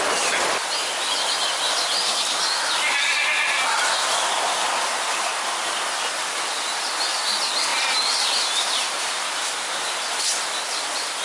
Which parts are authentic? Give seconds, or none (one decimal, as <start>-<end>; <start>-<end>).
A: 0.0-7.7; 9.3-11.2